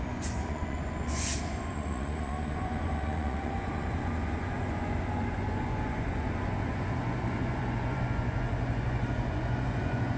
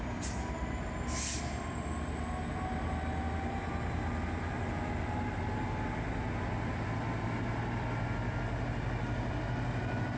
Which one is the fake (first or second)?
first